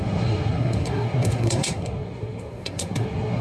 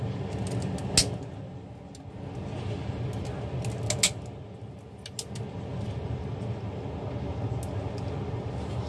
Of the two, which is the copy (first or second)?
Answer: first